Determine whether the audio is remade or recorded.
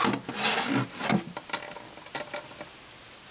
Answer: recorded